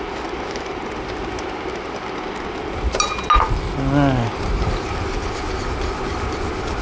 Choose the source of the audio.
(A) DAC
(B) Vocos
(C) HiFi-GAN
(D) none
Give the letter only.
D